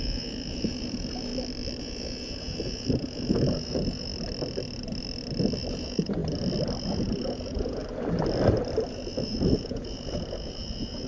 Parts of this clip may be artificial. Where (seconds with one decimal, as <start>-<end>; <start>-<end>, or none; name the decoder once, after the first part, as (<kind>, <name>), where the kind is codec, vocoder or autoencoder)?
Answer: 0.0-1.3 (vocoder, Vocos); 1.8-4.1; 5.7-6.2; 6.8-7.8; 8.9-11.1